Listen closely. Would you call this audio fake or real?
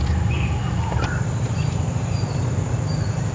fake